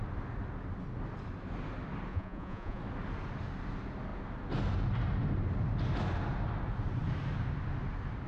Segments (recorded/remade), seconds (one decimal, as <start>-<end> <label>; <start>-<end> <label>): 0.0-2.1 recorded; 2.1-2.8 remade; 2.8-8.3 recorded